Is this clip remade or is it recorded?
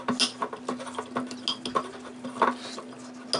recorded